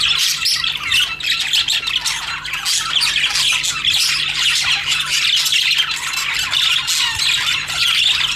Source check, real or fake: real